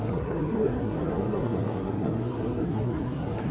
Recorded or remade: remade